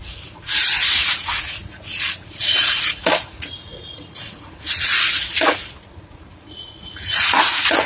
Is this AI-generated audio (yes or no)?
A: yes